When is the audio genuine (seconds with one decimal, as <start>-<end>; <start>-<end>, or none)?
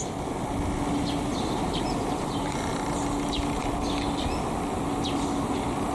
0.0-1.3; 2.7-5.9